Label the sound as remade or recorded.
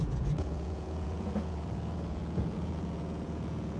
remade